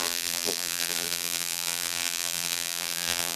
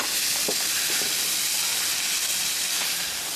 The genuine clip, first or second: second